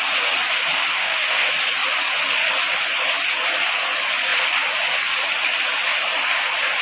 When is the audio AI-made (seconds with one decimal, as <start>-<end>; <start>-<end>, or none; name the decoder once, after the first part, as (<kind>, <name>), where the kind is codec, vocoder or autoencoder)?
0.9-1.5 (autoencoder, DAC-VAE)